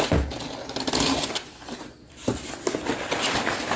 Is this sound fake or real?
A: real